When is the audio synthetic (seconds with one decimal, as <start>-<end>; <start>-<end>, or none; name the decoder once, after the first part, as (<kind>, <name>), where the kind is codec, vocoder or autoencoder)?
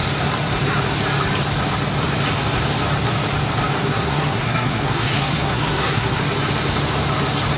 3.8-6.2 (codec, SNAC)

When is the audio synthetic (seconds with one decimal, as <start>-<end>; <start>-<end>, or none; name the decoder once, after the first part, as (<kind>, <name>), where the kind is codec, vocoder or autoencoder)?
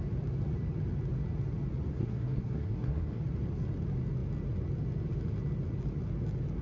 1.9-3.2 (codec, SNAC)